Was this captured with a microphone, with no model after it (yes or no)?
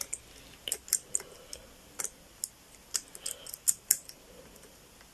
yes